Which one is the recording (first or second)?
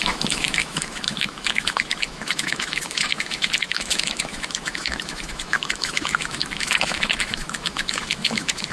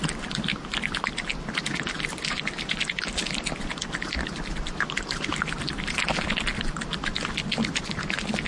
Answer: second